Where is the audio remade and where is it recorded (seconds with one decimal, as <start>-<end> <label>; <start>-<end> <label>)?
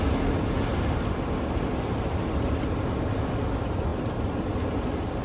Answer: 0.0-3.9 recorded; 3.9-4.6 remade; 4.6-5.2 recorded